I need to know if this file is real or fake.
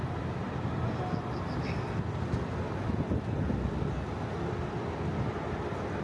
real